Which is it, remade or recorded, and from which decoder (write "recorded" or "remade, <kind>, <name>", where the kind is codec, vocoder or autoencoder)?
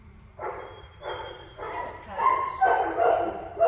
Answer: remade, vocoder, BigVGAN v2